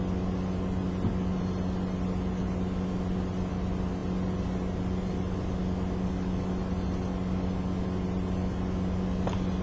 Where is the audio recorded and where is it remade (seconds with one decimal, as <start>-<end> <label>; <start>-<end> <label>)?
0.0-9.6 recorded